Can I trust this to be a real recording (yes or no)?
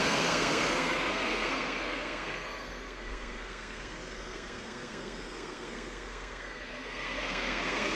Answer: no